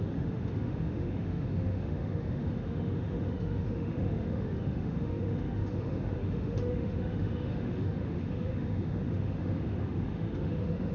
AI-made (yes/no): yes